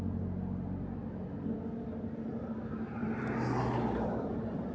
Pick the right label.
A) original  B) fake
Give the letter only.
A